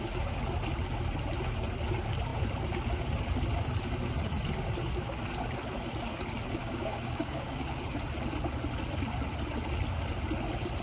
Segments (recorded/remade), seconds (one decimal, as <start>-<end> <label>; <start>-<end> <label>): 0.0-6.6 recorded; 6.6-7.8 remade; 7.8-10.8 recorded